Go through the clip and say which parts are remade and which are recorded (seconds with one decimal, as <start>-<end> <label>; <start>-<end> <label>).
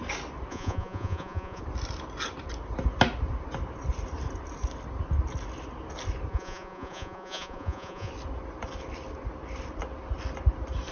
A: 0.0-0.5 recorded; 0.5-1.6 remade; 1.6-6.3 recorded; 6.3-8.1 remade; 8.1-10.9 recorded